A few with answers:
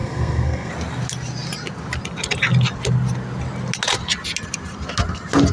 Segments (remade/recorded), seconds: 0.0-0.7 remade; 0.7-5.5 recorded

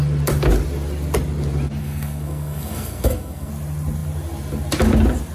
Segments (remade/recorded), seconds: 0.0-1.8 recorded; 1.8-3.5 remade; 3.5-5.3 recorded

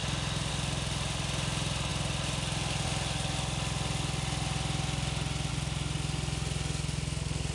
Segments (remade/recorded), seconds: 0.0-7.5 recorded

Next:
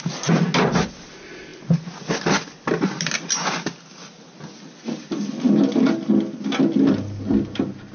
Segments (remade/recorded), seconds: 0.0-7.9 recorded